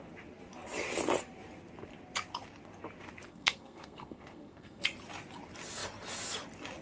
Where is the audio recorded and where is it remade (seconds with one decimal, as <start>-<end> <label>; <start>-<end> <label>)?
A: 0.0-3.3 recorded; 3.3-4.8 remade; 4.8-6.8 recorded